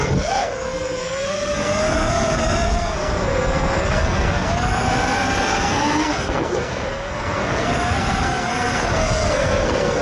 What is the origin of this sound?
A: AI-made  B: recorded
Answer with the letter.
A